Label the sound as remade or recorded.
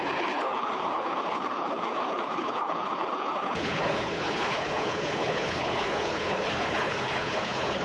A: remade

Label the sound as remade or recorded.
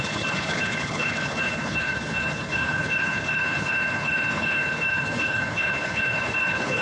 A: remade